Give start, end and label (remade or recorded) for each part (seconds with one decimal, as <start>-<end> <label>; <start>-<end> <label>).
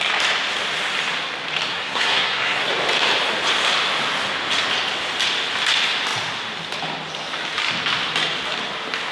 0.0-1.7 recorded; 1.7-2.7 remade; 2.7-9.1 recorded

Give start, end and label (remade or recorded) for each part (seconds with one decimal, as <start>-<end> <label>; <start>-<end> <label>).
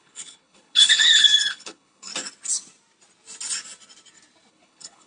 0.0-2.1 remade; 2.1-4.5 recorded; 4.5-5.1 remade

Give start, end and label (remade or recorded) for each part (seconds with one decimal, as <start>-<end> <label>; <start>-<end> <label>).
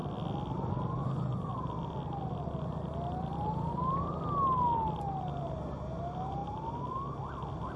0.0-7.8 recorded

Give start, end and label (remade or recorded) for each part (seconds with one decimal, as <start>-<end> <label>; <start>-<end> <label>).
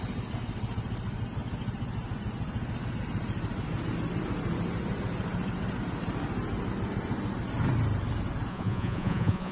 0.0-8.5 recorded; 8.5-9.5 remade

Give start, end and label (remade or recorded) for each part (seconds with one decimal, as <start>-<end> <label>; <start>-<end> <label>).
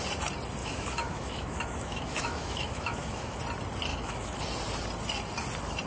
0.0-0.6 recorded; 0.6-3.4 remade; 3.4-3.9 recorded; 3.9-4.4 remade; 4.4-5.9 recorded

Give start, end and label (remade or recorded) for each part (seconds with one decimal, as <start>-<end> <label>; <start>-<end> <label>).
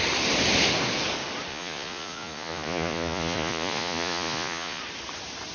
0.0-1.5 recorded; 1.5-4.8 remade; 4.8-5.5 recorded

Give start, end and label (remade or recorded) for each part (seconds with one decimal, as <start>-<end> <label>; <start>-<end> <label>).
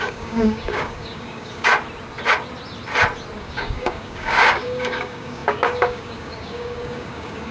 0.0-1.7 remade; 1.7-3.4 recorded; 3.4-7.5 remade